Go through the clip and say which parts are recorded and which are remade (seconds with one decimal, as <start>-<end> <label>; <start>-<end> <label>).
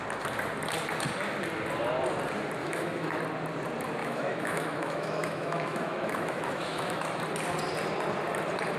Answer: 0.0-2.6 recorded; 2.6-3.2 remade; 3.2-4.0 recorded; 4.0-7.2 remade; 7.2-8.8 recorded